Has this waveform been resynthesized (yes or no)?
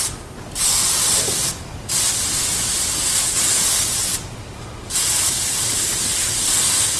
no